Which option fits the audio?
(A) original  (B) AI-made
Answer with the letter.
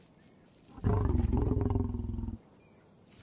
A